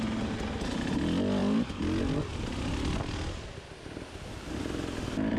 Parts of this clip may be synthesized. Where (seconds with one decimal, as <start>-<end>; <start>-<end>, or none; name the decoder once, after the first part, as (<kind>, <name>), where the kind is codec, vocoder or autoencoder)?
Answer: none